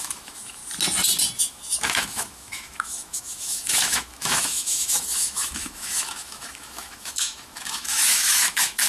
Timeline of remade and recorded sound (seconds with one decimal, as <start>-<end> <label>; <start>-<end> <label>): 0.0-0.6 remade; 0.6-1.4 recorded; 1.4-8.9 remade